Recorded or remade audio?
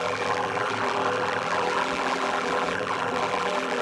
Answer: remade